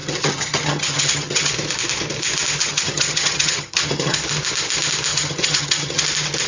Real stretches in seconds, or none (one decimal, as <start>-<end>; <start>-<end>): 1.5-2.6; 4.2-5.1; 6.0-6.5